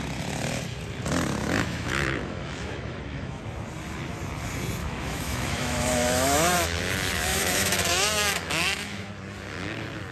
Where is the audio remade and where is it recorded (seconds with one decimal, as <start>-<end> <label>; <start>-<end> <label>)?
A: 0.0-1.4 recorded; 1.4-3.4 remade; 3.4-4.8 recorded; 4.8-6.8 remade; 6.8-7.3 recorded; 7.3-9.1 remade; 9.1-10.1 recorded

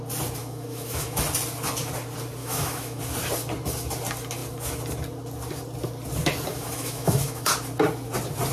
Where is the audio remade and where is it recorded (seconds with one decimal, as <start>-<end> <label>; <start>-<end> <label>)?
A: 0.0-0.4 recorded; 0.4-1.2 remade; 1.2-2.4 recorded; 2.4-3.0 remade; 3.0-6.5 recorded; 6.5-7.5 remade; 7.5-8.5 recorded

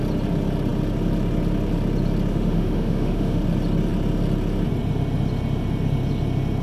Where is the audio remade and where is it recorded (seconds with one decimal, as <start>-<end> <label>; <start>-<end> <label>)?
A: 0.0-2.3 recorded; 2.3-3.4 remade; 3.4-6.6 recorded

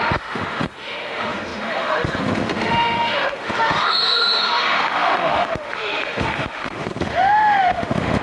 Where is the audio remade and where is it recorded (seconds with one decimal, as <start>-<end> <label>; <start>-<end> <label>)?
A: 0.0-8.2 remade

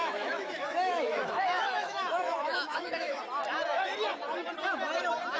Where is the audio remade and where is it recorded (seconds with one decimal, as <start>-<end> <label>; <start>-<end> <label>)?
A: 0.0-3.2 remade; 3.2-5.4 recorded